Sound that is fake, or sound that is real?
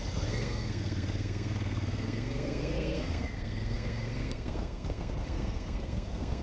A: fake